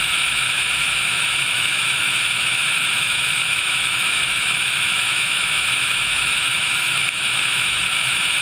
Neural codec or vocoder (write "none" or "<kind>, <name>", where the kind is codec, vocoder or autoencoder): autoencoder, DAC-VAE